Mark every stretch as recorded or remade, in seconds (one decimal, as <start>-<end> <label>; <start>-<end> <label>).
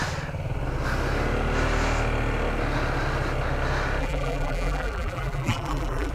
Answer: 0.0-4.0 recorded; 4.0-6.1 remade